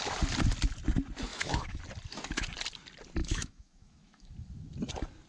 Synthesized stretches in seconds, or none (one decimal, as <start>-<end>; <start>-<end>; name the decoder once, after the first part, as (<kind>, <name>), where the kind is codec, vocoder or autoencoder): 1.3-1.8 (autoencoder, DAC-VAE); 3.2-4.3